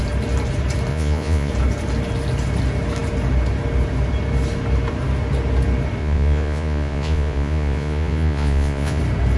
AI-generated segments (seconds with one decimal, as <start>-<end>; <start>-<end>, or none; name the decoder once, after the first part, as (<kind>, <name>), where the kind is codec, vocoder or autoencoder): 0.9-1.5 (vocoder, Vocos); 6.0-9.0